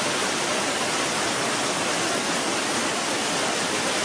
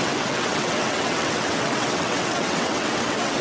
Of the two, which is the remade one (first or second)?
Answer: second